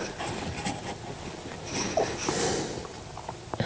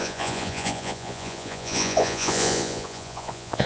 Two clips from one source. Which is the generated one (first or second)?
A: second